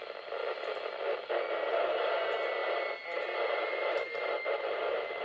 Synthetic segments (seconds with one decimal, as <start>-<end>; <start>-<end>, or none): none